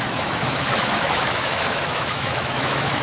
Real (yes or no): no